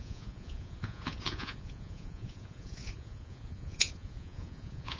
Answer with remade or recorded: remade